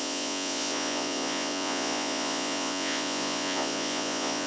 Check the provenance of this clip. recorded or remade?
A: remade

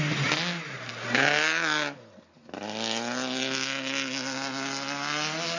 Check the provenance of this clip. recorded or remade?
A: recorded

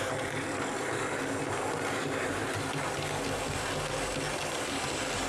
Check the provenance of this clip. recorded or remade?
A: recorded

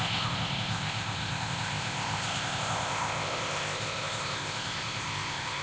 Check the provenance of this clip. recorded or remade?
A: remade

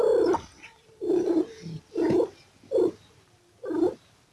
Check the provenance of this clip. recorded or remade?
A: remade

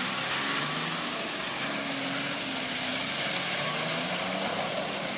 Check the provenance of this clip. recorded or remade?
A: recorded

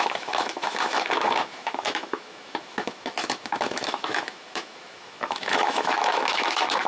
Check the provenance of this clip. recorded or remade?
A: remade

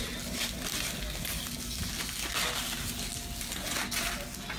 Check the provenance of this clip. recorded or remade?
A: recorded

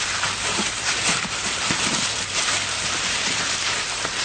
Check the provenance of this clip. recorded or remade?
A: remade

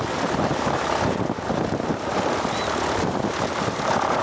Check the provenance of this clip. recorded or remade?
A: recorded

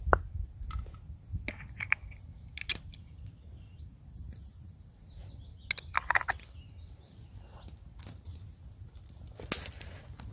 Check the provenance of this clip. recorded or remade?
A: recorded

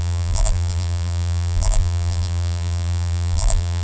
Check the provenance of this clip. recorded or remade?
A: remade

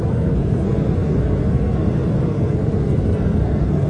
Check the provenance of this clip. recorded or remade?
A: remade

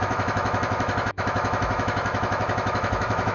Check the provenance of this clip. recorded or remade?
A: remade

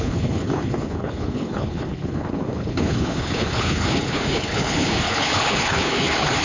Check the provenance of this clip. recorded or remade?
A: remade